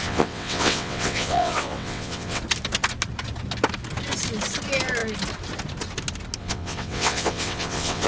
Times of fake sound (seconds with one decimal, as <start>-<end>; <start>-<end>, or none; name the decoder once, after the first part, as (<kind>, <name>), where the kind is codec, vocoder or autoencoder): 0.0-2.4 (vocoder, WaveNeXt); 6.4-8.1